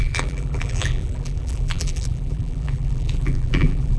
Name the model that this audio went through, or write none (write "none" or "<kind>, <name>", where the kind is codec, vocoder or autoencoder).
vocoder, BigVGAN v2